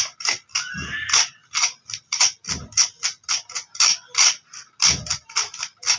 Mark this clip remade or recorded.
recorded